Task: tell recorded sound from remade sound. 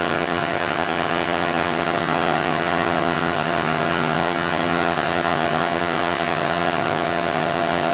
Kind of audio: remade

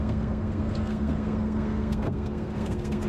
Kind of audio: remade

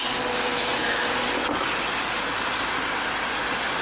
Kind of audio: recorded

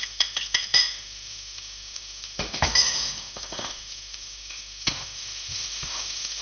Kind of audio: remade